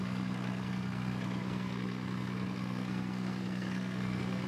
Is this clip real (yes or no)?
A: no